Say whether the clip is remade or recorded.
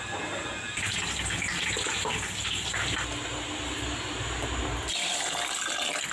recorded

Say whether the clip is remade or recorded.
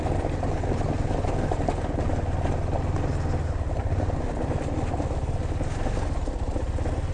recorded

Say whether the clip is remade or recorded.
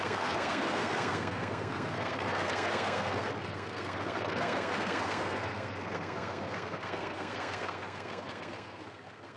remade